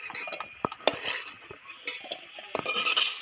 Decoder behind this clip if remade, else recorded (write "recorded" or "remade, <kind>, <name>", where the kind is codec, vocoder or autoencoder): recorded